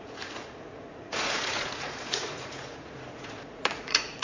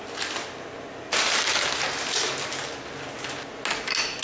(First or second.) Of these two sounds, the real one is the second